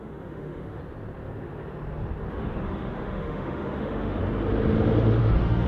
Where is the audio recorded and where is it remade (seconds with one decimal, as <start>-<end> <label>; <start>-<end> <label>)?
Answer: 0.0-0.8 remade; 0.8-2.3 recorded; 2.3-4.2 remade; 4.2-5.2 recorded; 5.2-5.7 remade